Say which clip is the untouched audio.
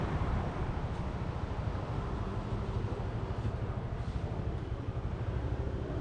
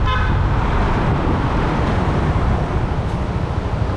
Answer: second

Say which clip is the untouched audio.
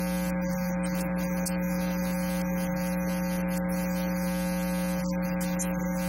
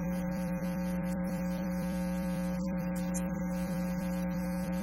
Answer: first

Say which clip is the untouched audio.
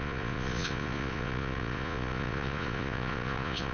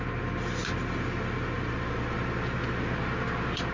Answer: second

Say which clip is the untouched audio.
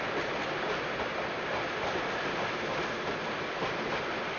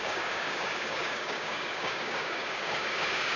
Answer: first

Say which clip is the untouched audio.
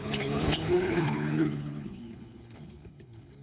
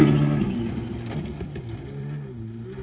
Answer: second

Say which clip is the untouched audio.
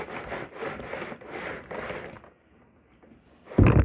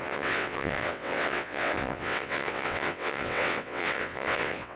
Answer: first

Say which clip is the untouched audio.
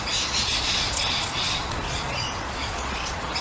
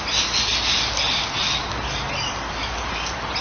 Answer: second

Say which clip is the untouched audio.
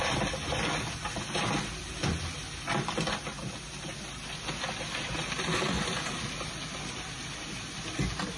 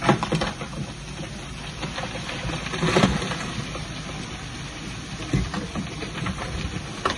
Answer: first